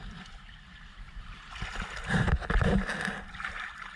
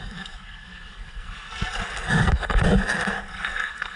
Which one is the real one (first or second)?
first